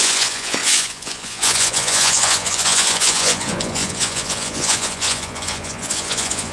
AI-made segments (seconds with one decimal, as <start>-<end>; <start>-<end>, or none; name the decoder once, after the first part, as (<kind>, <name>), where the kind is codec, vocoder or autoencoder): 0.0-6.5 (vocoder, Vocos)